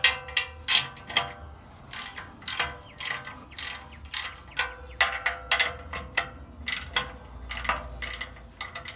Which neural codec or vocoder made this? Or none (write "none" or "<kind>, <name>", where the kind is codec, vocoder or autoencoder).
none